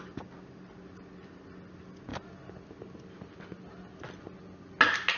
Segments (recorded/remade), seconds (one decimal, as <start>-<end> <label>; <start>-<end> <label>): 0.0-5.2 recorded